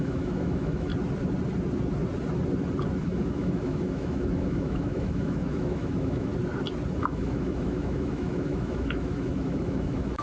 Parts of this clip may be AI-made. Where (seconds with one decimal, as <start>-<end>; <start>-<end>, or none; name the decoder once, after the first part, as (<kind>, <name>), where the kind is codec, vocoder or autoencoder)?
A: 0.0-0.9 (autoencoder, DAC-VAE); 3.0-6.3; 7.0-10.2